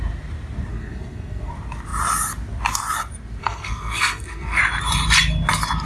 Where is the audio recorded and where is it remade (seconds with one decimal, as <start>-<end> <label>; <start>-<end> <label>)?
0.0-0.7 recorded; 0.7-1.5 remade; 1.5-3.4 recorded; 3.4-4.6 remade; 4.6-5.9 recorded